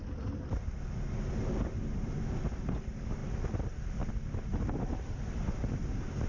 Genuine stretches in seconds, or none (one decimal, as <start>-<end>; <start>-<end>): 0.0-6.3